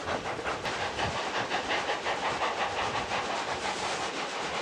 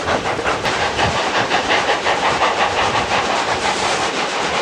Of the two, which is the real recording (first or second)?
first